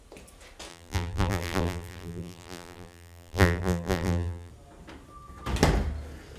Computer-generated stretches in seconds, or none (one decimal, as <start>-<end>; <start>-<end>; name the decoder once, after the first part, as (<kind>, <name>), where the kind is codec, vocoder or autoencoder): 0.7-4.5 (vocoder, BigVGAN v2)